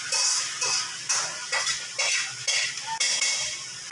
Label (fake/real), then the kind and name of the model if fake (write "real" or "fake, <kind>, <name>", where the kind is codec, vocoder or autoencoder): real